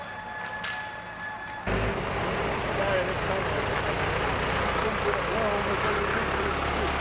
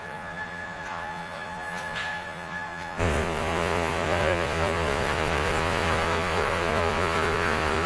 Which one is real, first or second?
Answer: first